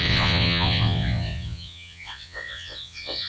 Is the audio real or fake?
fake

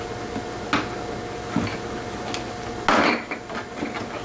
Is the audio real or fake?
real